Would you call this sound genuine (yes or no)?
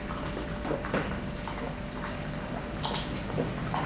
yes